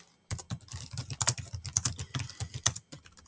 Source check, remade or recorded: recorded